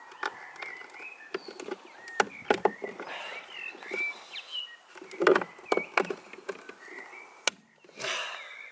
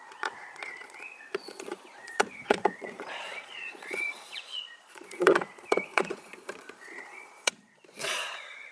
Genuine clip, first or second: first